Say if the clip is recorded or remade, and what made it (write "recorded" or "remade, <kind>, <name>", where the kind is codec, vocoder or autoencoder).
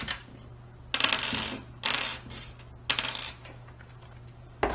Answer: recorded